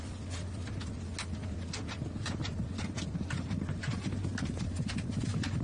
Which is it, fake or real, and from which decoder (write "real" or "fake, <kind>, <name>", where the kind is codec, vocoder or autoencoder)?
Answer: real